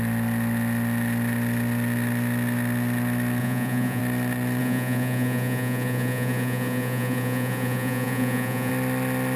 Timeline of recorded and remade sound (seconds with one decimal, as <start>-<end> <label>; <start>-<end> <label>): 0.0-3.4 recorded; 3.4-4.0 remade; 4.0-4.6 recorded; 4.6-8.7 remade; 8.7-9.4 recorded